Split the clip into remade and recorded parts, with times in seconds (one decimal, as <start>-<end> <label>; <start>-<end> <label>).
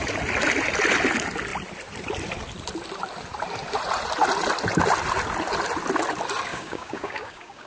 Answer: 0.0-6.5 recorded; 6.5-7.7 remade